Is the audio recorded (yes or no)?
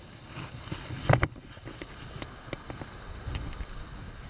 yes